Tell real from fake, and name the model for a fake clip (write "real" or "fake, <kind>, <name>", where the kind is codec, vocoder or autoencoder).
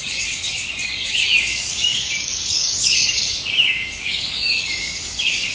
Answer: fake, codec, DAC